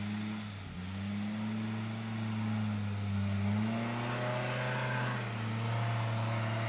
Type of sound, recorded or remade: recorded